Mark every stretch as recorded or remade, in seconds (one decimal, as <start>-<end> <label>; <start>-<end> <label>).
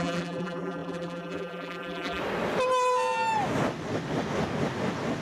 0.0-2.2 remade; 2.2-5.2 recorded